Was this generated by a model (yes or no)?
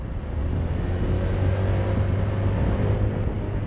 no